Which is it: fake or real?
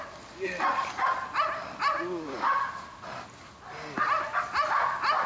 real